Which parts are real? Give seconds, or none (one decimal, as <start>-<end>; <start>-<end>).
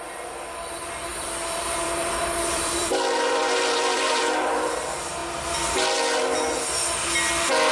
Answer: 0.0-1.1; 4.2-7.7